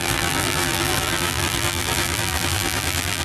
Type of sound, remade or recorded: remade